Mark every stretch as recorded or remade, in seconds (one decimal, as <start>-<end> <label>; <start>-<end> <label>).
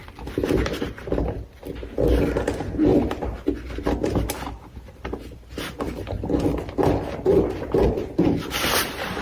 0.0-9.2 recorded